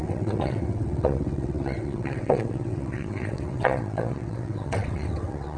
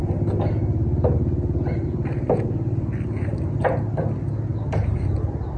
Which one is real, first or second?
second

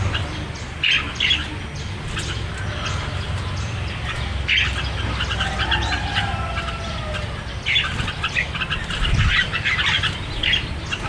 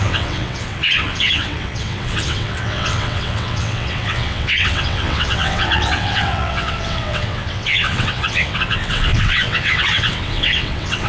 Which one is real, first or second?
first